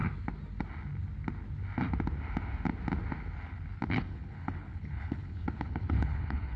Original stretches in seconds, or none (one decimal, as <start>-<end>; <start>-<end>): 0.0-3.9